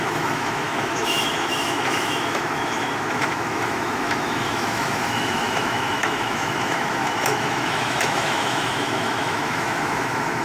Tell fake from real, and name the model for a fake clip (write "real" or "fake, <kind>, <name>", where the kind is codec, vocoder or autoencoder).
fake, autoencoder, DAC-VAE